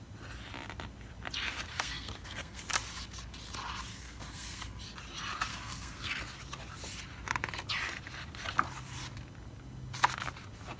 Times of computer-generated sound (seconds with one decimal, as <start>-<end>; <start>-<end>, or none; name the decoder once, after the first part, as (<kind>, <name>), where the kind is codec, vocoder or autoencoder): 1.7-2.6 (codec, SNAC); 3.9-4.8; 5.5-6.1